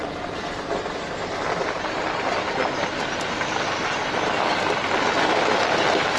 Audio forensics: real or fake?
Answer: real